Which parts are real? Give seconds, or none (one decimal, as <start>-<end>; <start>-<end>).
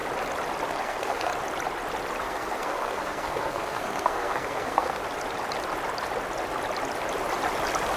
0.0-0.7; 1.3-2.2; 5.0-8.0